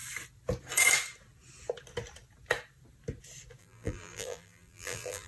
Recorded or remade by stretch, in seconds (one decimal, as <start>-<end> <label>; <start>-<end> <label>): 0.0-3.6 recorded; 3.6-5.3 remade